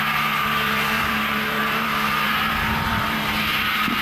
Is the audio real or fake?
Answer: fake